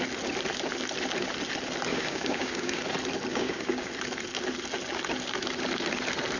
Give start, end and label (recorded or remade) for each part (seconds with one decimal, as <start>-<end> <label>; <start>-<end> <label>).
0.0-1.9 recorded; 1.9-2.8 remade; 2.8-3.3 recorded; 3.3-3.9 remade; 3.9-6.4 recorded